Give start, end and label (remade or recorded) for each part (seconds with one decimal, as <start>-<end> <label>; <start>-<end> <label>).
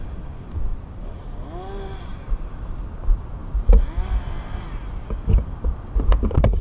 0.0-6.6 recorded